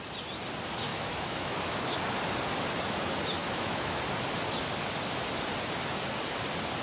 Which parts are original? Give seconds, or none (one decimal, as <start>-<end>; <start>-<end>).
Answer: 0.0-0.9; 2.0-3.4; 4.0-6.8